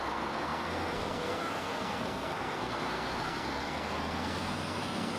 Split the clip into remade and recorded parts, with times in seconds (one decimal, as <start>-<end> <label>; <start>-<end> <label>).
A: 0.0-5.2 remade

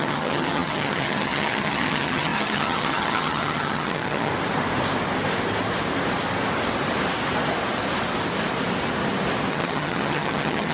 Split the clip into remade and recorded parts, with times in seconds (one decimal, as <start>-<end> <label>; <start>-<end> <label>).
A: 0.0-4.3 remade; 4.3-9.5 recorded; 9.5-10.7 remade

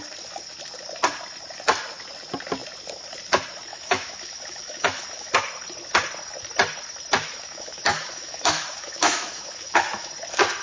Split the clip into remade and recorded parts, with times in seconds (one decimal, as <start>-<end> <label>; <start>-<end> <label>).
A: 0.0-3.7 recorded; 3.7-5.3 remade; 5.3-7.2 recorded; 7.2-10.1 remade; 10.1-10.6 recorded

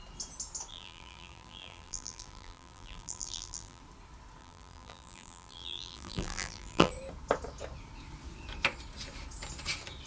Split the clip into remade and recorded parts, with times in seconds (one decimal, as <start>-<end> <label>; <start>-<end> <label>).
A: 0.0-0.7 recorded; 0.7-3.8 remade; 3.8-4.4 recorded; 4.4-6.9 remade; 6.9-10.1 recorded

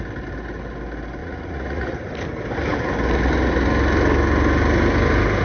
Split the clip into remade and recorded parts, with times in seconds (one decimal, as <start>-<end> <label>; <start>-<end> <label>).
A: 0.0-1.2 recorded; 1.2-2.1 remade; 2.1-5.4 recorded

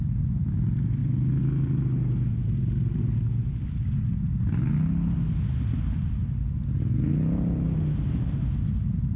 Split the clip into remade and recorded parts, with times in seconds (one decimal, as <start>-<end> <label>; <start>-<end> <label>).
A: 0.0-9.2 recorded

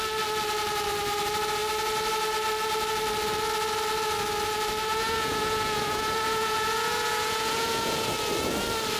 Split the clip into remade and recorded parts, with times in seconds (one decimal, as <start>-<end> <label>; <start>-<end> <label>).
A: 0.0-4.9 recorded; 4.9-8.1 remade; 8.1-9.0 recorded

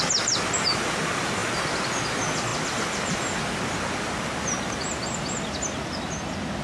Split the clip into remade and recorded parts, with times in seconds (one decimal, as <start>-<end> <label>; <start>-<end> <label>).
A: 0.0-6.6 recorded